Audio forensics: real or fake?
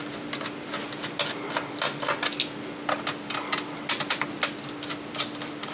real